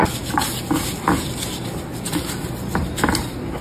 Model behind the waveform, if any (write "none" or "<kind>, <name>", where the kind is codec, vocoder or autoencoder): none